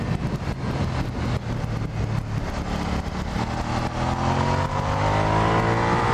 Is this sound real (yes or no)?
yes